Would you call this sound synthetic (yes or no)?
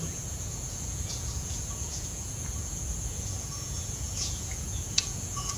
yes